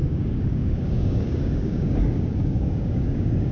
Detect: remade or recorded remade